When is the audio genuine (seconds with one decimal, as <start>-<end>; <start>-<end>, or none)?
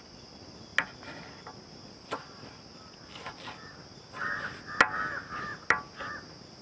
0.0-6.6